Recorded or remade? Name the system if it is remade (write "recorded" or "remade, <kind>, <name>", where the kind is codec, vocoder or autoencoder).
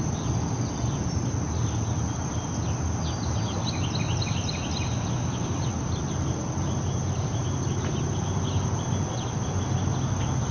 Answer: recorded